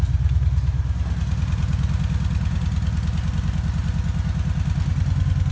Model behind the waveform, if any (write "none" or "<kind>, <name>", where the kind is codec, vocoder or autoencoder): none